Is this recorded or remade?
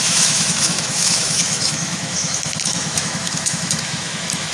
remade